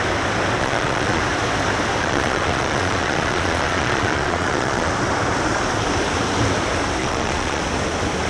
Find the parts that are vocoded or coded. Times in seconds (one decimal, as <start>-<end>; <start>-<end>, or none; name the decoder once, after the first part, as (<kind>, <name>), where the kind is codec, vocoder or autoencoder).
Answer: 0.6-1.2 (vocoder, Vocos); 2.0-4.9; 7.0-7.6